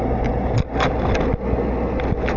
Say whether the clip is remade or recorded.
recorded